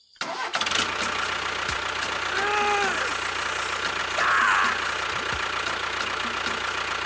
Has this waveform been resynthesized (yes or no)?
no